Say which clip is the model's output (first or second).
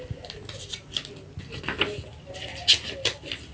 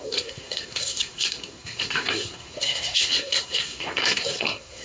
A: second